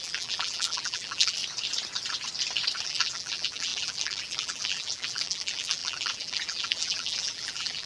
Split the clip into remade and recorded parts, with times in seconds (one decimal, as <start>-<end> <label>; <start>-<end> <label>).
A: 0.0-1.4 remade; 1.4-2.8 recorded; 2.8-7.9 remade